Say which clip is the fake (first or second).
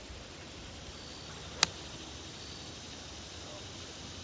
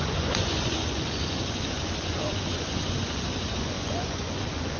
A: second